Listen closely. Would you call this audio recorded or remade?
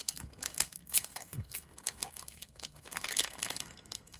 remade